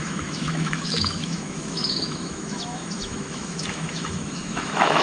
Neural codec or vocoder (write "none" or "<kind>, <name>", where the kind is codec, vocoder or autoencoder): autoencoder, DAC-VAE